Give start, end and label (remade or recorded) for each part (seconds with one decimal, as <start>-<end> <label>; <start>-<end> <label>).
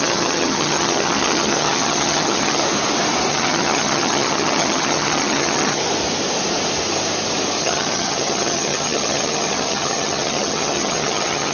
0.0-2.6 remade; 2.6-3.3 recorded; 3.3-5.8 remade; 5.8-7.6 recorded; 7.6-11.5 remade